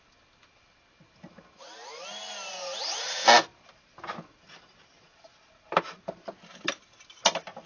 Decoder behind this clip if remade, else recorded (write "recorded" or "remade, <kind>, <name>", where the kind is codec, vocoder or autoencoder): recorded